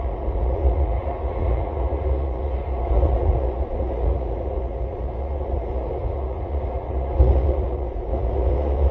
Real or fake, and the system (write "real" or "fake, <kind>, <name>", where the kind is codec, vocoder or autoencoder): fake, vocoder, Vocos